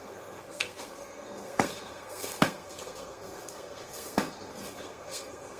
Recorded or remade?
remade